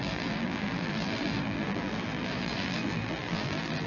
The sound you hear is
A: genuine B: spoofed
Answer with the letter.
B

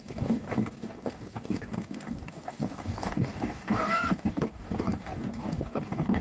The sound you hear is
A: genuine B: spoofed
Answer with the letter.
B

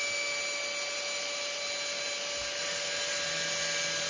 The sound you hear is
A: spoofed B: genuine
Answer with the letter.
B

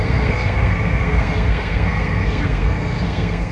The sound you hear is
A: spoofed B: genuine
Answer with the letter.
A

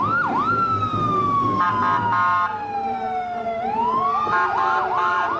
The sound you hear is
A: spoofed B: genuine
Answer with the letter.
B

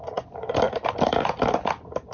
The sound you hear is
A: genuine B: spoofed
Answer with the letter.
A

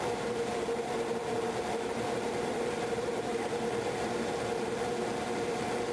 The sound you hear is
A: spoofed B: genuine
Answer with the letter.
A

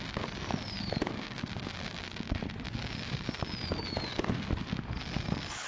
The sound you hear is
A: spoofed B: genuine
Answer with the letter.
B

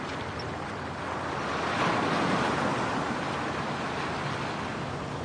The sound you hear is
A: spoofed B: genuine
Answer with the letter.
B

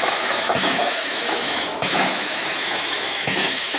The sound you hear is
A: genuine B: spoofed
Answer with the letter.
B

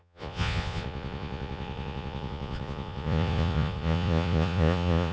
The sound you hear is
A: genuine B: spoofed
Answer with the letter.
B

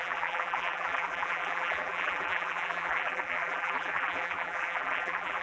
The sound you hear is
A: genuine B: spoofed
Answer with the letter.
B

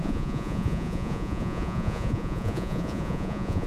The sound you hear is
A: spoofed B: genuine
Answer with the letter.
A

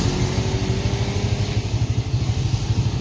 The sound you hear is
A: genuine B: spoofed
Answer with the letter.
A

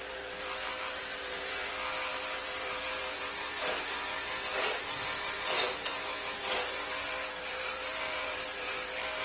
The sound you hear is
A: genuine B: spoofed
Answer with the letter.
B